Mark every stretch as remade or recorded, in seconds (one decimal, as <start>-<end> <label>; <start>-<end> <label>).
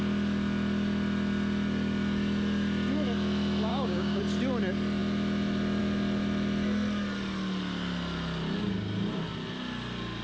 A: 0.0-3.7 recorded; 3.7-4.2 remade; 4.2-10.2 recorded